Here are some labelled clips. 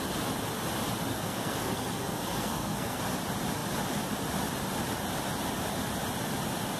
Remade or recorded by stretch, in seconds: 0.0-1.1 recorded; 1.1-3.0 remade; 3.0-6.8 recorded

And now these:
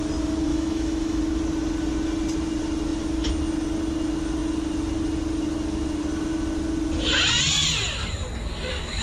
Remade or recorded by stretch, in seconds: 0.0-0.5 recorded; 0.5-1.2 remade; 1.2-9.0 recorded